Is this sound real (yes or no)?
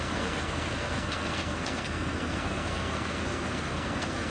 no